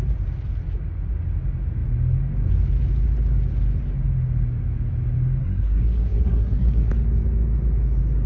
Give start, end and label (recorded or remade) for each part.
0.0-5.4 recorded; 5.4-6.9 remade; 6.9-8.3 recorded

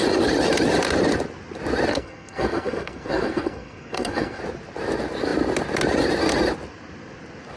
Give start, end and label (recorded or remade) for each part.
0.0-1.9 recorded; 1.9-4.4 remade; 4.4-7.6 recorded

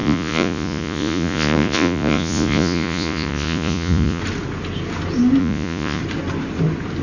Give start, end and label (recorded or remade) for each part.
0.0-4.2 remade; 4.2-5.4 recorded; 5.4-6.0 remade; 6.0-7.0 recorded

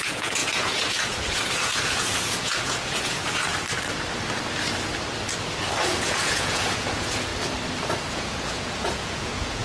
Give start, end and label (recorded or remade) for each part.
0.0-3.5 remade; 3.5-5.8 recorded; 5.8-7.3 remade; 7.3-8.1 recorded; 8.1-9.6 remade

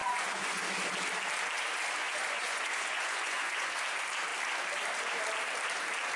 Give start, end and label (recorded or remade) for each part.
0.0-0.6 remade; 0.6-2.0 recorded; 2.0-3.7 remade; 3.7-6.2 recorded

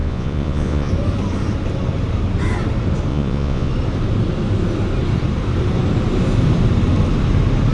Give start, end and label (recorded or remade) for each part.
0.0-0.9 remade; 0.9-3.1 recorded; 3.1-3.7 remade; 3.7-7.7 recorded